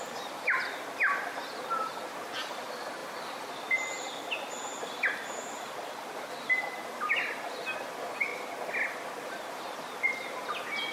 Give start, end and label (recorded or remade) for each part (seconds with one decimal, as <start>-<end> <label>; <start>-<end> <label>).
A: 0.0-10.9 recorded